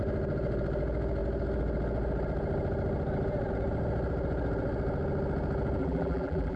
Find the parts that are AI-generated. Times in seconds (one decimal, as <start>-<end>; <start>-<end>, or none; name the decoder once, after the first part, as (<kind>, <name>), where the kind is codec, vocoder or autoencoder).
5.8-6.6 (vocoder, BigVGAN v2)